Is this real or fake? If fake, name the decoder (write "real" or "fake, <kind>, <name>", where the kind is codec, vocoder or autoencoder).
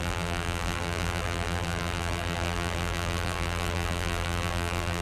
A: fake, vocoder, BigVGAN v2